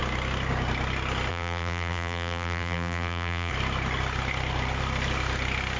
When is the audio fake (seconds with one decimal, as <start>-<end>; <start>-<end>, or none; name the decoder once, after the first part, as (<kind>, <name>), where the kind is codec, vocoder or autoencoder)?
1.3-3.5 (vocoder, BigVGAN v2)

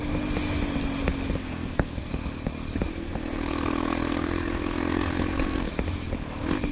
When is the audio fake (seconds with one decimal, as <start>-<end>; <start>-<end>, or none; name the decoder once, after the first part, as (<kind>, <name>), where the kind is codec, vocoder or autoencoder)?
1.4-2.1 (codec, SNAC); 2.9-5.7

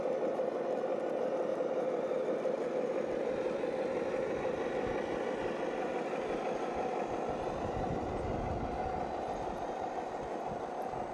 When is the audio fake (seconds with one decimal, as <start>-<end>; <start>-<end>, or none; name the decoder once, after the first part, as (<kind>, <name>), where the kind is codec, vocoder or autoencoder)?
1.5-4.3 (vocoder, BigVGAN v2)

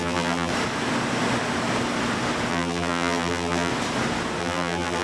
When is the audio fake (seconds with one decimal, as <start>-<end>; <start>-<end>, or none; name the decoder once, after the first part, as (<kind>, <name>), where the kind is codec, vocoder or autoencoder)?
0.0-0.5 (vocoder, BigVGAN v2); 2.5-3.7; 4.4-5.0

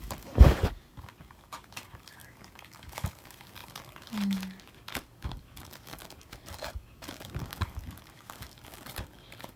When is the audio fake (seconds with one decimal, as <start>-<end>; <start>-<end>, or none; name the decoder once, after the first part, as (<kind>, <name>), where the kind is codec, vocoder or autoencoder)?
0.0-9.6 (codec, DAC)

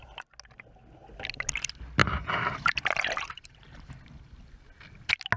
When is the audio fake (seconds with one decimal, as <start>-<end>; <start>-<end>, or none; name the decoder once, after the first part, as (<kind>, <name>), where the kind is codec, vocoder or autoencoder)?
2.0-3.9 (vocoder, BigVGAN v2)